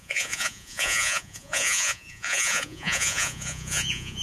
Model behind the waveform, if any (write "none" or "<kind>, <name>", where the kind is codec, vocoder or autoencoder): vocoder, Vocos